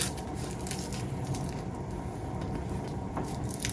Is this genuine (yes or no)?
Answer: yes